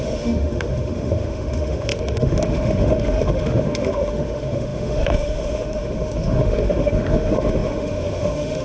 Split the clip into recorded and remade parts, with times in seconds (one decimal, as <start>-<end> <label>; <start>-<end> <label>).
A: 0.0-8.6 remade